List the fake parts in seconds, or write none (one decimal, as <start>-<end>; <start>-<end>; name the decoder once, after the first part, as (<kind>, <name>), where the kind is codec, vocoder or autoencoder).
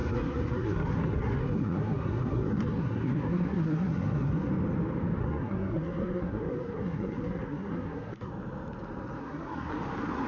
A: 0.0-4.5 (codec, SNAC); 5.2-8.3; 9.2-9.7